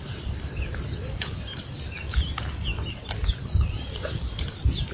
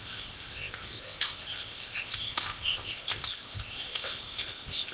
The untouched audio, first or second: first